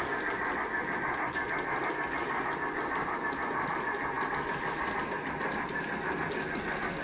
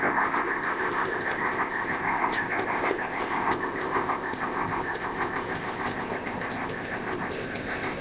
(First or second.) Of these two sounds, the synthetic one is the second